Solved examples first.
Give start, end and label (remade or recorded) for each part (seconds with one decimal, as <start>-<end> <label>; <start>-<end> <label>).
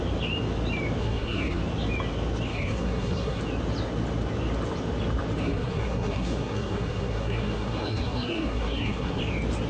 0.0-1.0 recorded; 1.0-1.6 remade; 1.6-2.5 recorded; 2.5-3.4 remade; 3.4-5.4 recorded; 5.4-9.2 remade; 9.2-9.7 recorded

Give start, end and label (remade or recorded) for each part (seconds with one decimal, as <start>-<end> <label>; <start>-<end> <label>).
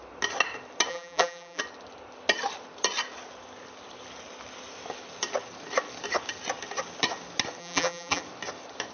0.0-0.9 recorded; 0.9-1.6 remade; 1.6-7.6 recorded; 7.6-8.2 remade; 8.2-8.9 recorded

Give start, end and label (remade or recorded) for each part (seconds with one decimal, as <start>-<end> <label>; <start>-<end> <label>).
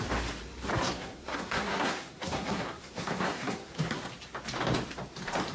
0.0-0.7 recorded; 0.7-4.0 remade; 4.0-5.5 recorded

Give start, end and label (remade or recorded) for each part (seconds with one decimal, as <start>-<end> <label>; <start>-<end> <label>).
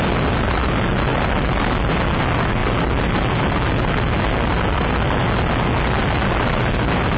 0.0-7.2 recorded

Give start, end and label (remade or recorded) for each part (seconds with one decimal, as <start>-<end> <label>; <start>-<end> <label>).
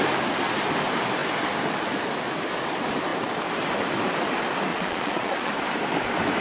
0.0-4.7 recorded; 4.7-5.5 remade; 5.5-6.4 recorded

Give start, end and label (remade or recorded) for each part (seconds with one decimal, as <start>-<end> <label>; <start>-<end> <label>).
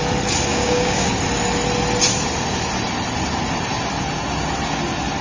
0.0-0.5 recorded; 0.5-1.1 remade; 1.1-5.2 recorded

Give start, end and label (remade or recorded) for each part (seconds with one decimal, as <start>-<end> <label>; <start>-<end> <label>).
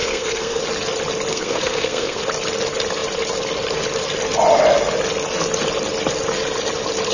0.0-0.6 remade; 0.6-1.3 recorded; 1.3-2.2 remade; 2.2-7.1 recorded